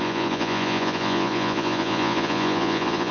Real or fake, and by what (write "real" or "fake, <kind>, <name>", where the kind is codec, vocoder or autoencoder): fake, vocoder, Vocos